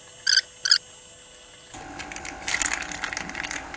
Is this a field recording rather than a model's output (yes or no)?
yes